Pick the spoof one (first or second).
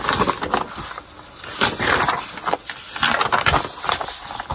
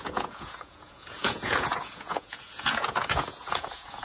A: second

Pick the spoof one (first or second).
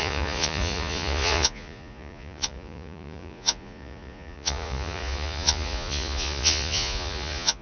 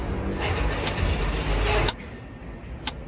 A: first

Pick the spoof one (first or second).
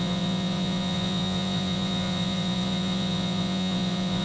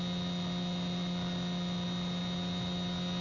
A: first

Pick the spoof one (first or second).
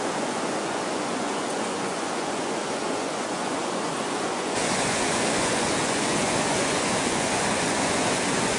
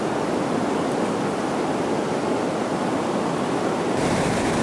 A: first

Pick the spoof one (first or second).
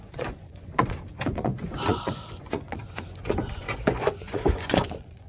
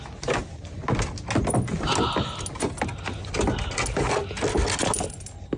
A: first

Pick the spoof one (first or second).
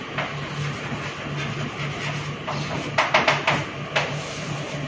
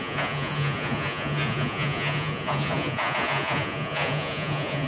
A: second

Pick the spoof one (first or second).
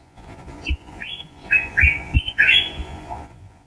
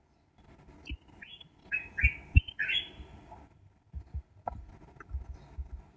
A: first